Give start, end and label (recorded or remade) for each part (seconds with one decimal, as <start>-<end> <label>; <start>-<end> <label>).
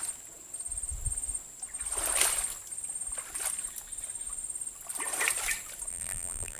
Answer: 0.0-5.9 recorded; 5.9-6.6 remade